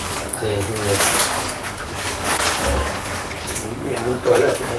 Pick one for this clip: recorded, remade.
remade